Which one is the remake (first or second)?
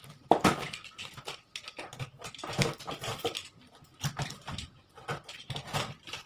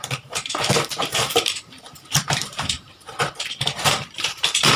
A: second